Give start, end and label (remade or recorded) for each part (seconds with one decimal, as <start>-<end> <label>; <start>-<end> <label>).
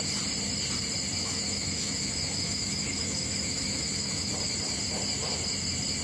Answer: 0.0-1.2 recorded; 1.2-4.3 remade; 4.3-6.0 recorded